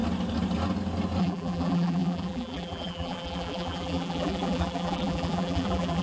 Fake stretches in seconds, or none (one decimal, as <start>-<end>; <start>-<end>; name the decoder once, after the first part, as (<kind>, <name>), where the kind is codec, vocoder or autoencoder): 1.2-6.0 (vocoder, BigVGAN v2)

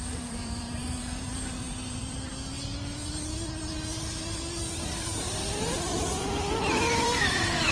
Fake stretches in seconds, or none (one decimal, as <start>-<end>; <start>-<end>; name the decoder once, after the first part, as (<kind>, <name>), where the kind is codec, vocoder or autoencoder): 0.0-2.3 (vocoder, BigVGAN v2); 6.8-7.7

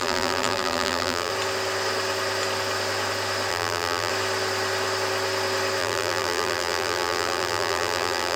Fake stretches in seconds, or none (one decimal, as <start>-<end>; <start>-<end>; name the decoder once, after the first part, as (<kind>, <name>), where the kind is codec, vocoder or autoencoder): 0.0-1.3 (vocoder, BigVGAN v2); 3.5-4.1; 5.8-8.4